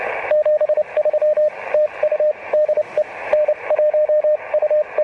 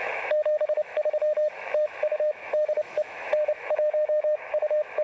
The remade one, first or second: second